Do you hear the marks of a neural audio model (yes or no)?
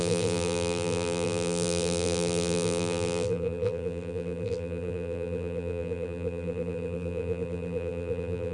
yes